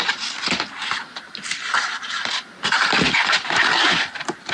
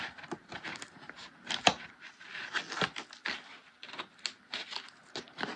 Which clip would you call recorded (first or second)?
second